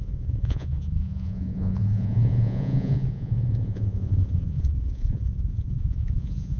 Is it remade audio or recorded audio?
remade